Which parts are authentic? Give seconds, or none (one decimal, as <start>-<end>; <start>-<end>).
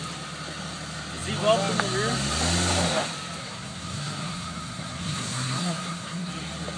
0.0-3.4; 6.3-6.8